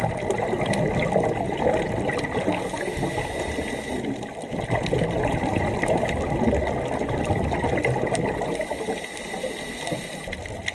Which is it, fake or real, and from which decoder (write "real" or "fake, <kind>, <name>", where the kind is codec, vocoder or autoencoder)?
real